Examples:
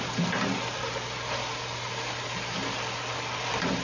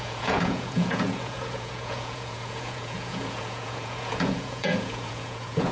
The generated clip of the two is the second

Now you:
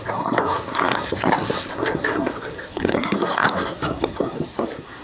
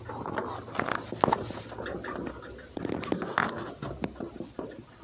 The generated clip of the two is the first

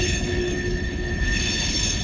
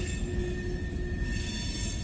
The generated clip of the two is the first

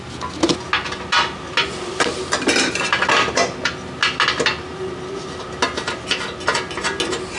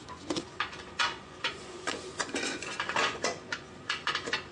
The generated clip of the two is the second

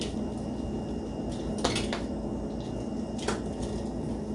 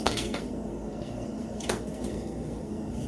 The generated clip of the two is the second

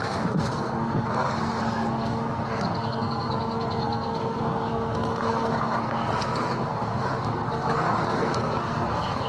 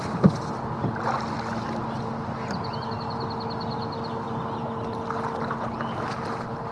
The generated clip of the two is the first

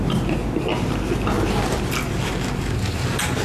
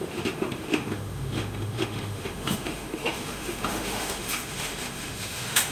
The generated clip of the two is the second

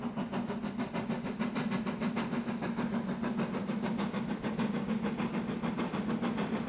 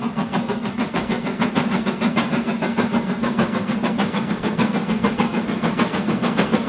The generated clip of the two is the second